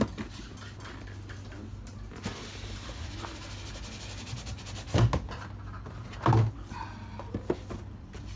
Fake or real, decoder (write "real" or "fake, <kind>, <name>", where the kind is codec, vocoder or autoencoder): real